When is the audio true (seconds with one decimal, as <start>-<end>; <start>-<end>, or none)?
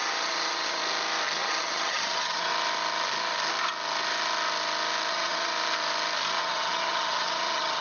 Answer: 0.8-1.4; 2.5-5.1; 5.5-6.4